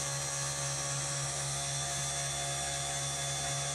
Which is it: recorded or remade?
recorded